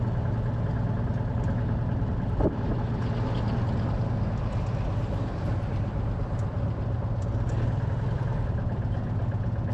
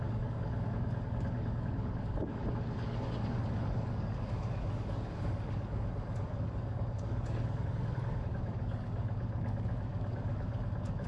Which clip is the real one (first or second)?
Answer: first